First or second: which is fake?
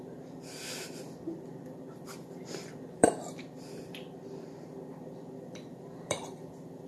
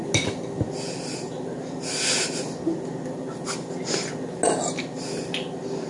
first